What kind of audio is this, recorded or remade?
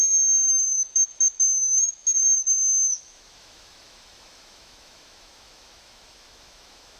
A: remade